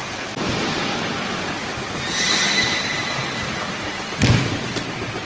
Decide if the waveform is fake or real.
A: real